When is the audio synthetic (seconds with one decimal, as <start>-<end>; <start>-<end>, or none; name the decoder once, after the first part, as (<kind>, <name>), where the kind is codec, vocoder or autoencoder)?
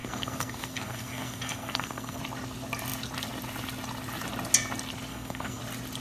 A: 0.0-2.2 (codec, SNAC); 5.1-5.6